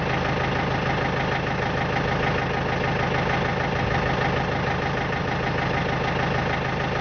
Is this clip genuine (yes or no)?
yes